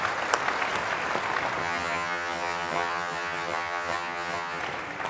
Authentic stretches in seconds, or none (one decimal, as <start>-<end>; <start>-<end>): 0.0-1.6; 4.6-5.1